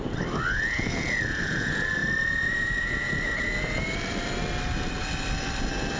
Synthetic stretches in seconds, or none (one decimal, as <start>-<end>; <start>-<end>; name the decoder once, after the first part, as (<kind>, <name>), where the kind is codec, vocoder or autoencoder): none